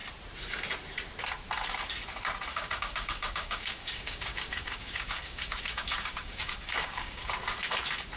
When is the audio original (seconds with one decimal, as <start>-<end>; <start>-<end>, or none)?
0.0-2.5; 7.2-8.2